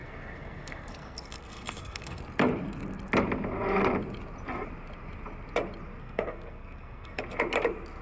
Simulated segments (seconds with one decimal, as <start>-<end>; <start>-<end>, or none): 0.0-2.2; 6.0-7.2